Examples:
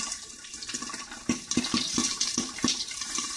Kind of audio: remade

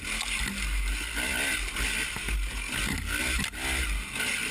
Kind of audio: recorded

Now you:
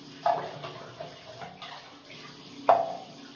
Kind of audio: recorded